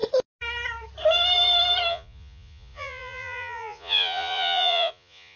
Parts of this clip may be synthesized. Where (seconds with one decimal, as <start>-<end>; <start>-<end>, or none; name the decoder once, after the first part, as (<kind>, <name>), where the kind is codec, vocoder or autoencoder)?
1.9-5.4 (vocoder, Vocos)